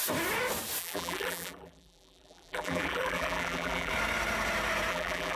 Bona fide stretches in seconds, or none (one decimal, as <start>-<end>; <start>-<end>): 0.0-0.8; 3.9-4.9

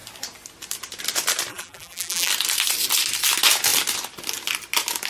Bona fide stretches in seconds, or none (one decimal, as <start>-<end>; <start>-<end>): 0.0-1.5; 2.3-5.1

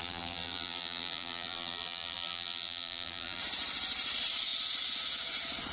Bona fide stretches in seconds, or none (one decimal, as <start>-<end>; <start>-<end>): 3.4-5.7

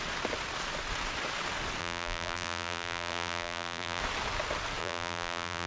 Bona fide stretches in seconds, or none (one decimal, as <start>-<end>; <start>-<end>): 0.0-1.8; 4.0-4.8

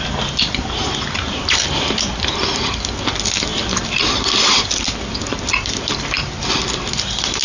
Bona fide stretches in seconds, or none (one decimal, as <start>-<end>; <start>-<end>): 0.0-0.8; 1.6-3.5; 4.7-7.4